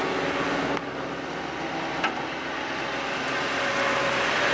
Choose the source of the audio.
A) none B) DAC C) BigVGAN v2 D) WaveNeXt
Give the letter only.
A